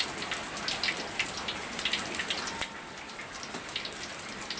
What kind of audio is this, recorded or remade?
recorded